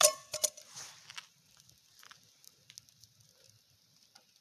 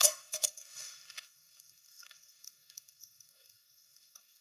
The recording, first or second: first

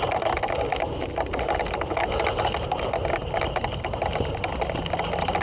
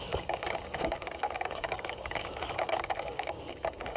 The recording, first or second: first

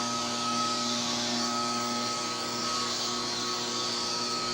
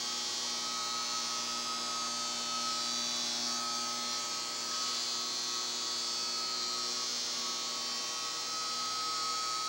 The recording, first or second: second